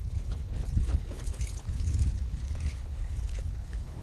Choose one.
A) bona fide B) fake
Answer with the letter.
B